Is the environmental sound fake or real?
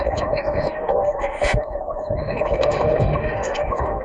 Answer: fake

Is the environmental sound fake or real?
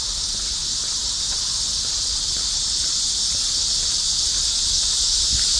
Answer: real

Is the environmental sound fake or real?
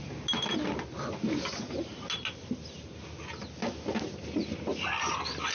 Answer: real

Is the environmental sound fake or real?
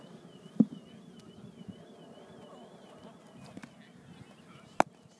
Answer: real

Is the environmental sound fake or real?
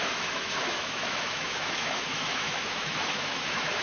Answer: fake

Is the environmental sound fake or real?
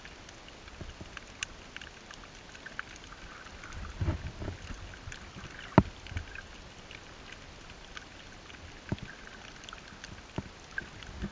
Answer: real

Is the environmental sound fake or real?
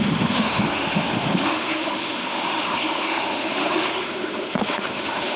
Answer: fake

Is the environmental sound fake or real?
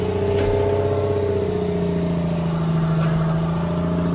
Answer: real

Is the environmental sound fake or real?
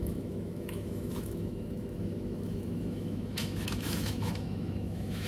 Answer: fake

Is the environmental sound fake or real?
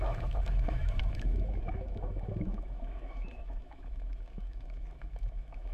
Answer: fake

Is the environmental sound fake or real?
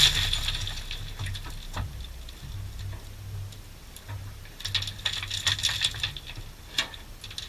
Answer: real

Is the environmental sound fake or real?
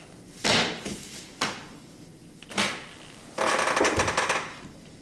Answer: real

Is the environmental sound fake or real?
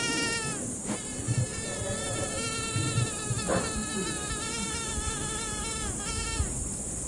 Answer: real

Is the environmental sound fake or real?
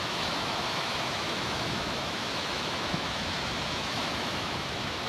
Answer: fake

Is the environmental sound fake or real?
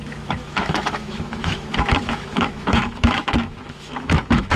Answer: fake